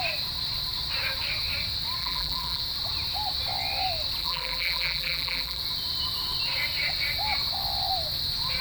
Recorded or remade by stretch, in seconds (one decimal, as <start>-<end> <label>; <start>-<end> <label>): 0.0-2.0 recorded; 2.0-2.6 remade; 2.6-4.2 recorded; 4.2-5.6 remade; 5.6-8.6 recorded